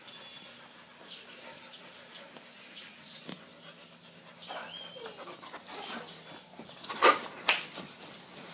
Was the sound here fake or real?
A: real